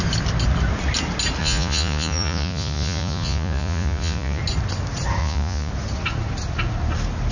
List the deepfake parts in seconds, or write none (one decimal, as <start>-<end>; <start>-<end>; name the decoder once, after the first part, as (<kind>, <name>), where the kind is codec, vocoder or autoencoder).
1.4-4.4 (vocoder, Vocos); 5.2-5.7